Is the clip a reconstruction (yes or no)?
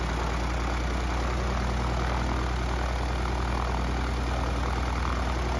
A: no